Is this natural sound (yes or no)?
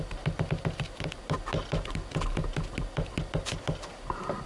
yes